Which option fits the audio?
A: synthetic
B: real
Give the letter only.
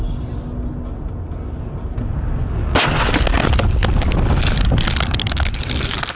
B